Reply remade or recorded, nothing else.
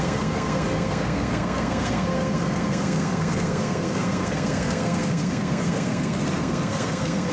remade